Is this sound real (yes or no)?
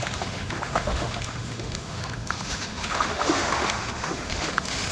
no